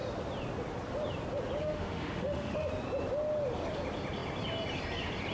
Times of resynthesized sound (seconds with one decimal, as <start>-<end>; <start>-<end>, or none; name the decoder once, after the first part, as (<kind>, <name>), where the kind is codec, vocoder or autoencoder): 1.6-2.7 (autoencoder, DAC-VAE)